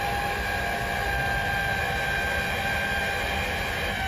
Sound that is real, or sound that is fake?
real